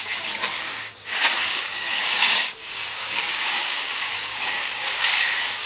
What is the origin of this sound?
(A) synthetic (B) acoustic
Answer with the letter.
A